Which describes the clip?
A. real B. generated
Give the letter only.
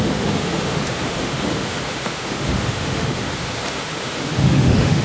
B